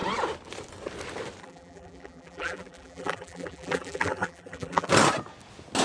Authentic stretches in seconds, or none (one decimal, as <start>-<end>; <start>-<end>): 0.0-1.4; 4.9-5.8